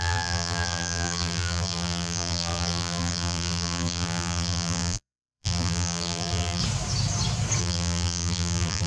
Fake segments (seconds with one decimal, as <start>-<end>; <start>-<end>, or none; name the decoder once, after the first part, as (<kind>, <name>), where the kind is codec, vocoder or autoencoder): 0.0-6.6 (vocoder, BigVGAN v2); 7.6-8.9